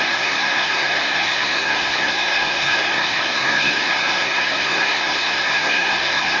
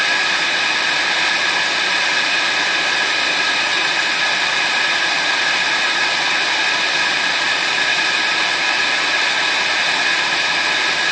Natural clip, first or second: second